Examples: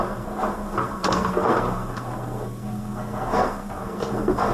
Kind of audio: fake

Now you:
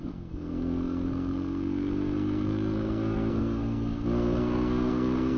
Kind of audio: fake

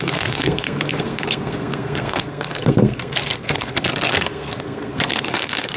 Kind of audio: fake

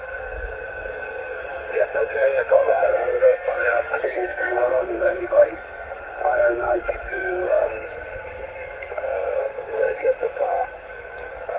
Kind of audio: fake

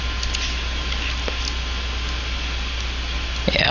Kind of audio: real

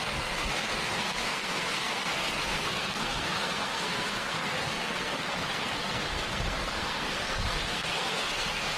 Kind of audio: fake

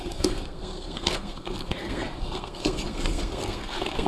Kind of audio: fake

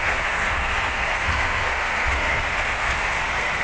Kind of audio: fake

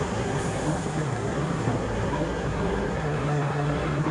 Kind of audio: fake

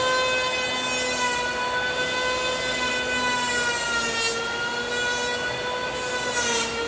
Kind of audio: real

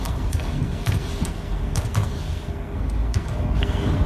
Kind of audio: fake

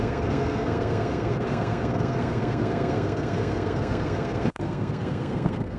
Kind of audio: fake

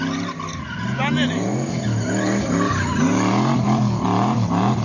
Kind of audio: real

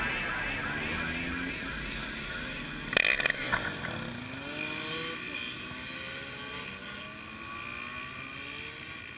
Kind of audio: real